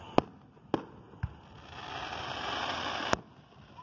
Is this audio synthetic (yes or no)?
no